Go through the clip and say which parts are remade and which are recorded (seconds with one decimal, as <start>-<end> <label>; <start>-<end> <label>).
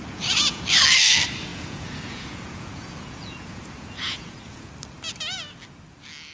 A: 0.0-0.6 remade; 0.6-1.5 recorded; 1.5-4.7 remade; 4.7-6.3 recorded